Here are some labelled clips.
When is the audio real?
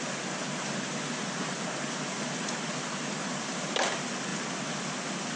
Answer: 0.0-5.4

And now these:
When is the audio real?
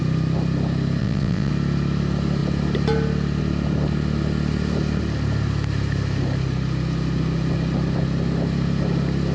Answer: 0.0-1.0; 1.5-9.3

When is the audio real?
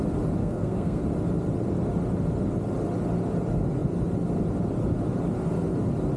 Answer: 0.0-0.4; 1.0-6.2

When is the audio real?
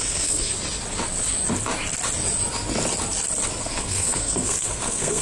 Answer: 0.5-3.6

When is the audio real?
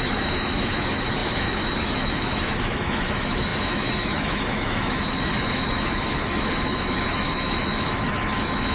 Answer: none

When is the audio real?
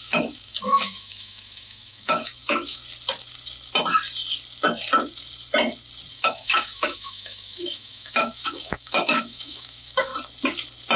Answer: 2.8-6.1; 10.1-11.0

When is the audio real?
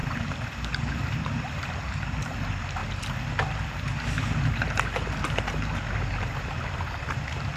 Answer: 0.8-7.6